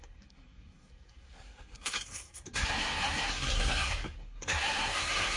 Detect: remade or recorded remade